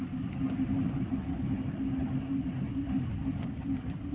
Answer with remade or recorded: recorded